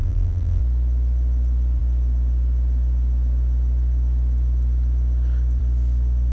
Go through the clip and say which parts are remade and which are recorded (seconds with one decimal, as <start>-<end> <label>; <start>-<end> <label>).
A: 0.0-0.6 remade; 0.6-6.3 recorded